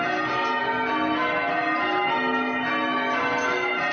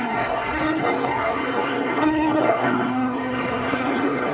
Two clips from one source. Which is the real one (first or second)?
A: first